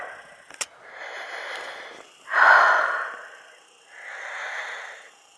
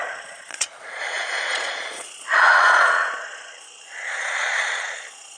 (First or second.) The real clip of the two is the first